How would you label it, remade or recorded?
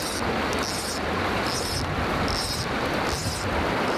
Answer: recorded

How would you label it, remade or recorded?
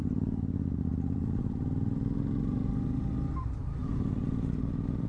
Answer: recorded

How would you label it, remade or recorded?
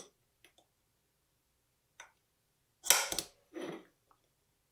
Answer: recorded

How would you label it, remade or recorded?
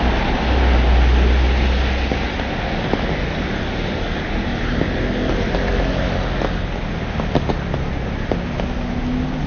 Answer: recorded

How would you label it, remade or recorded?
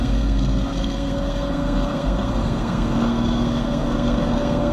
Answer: remade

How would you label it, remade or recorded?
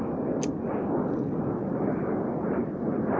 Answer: recorded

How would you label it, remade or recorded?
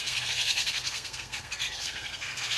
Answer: remade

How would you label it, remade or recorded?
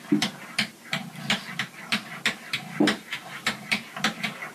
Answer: recorded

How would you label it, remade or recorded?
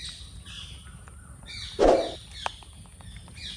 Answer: recorded